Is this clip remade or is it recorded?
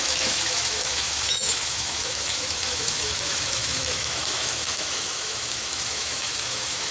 remade